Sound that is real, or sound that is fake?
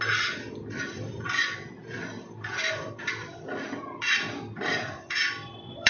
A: fake